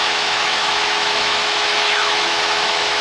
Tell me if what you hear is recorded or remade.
remade